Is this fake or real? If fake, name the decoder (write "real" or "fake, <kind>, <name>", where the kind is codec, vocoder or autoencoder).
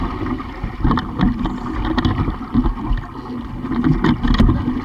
real